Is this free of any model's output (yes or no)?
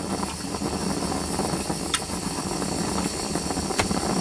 yes